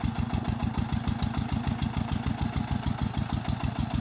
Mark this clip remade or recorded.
recorded